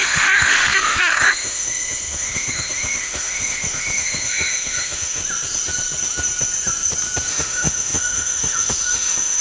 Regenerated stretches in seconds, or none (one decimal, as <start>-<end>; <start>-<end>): 0.0-5.2; 7.3-9.4